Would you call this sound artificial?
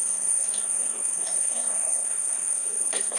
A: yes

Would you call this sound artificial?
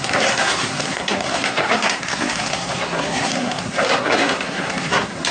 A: yes